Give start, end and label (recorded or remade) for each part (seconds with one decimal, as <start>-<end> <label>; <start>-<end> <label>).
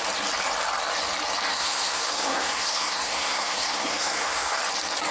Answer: 0.0-1.5 recorded; 1.5-4.6 remade; 4.6-5.1 recorded